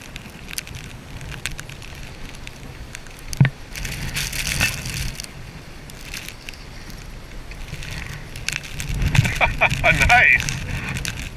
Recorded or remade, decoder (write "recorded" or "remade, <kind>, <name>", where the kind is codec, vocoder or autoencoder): recorded